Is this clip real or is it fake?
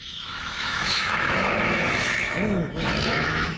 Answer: fake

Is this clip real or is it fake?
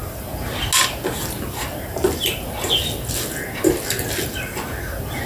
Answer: real